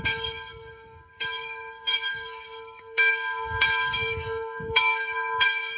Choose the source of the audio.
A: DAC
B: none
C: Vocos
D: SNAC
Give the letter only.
A